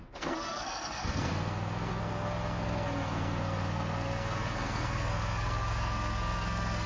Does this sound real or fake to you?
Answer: fake